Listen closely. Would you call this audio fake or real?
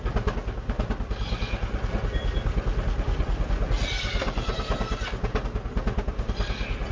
real